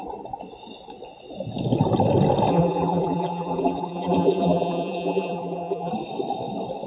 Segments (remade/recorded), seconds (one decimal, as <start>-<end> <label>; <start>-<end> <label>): 0.0-2.5 recorded; 2.5-5.9 remade; 5.9-6.9 recorded